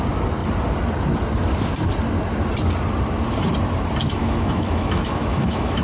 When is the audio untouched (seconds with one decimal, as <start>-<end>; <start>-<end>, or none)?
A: 0.0-4.2